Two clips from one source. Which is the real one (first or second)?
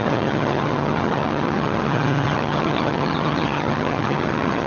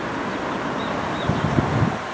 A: second